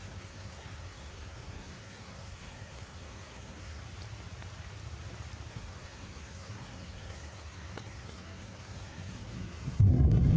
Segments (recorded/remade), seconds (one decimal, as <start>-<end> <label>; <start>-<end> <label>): 0.0-3.8 remade; 3.8-5.5 recorded; 5.5-10.4 remade